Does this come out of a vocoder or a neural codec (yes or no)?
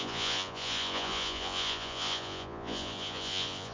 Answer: yes